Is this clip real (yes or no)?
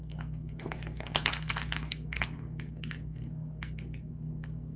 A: no